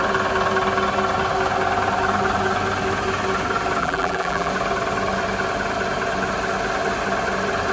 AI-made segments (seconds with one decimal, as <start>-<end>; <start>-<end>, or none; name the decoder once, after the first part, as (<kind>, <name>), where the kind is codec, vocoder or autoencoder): 3.8-4.5 (vocoder, BigVGAN v2)